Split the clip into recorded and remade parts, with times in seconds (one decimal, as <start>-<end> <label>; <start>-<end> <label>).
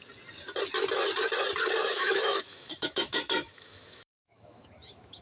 0.0-1.8 recorded; 1.8-5.2 remade